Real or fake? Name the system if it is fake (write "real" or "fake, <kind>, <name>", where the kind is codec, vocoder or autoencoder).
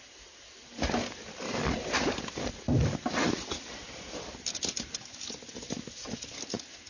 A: real